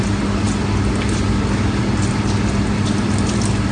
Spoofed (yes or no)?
no